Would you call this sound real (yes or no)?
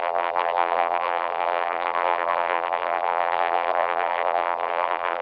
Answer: no